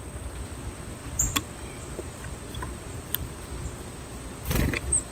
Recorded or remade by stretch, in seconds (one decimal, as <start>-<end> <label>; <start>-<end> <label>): 0.0-5.1 recorded